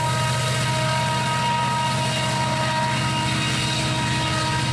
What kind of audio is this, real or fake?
real